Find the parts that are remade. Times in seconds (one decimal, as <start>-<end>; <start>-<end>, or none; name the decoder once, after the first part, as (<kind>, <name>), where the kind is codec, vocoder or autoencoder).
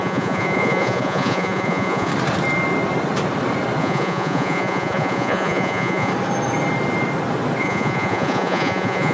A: 0.0-2.1 (vocoder, Vocos); 3.8-6.1; 7.6-9.1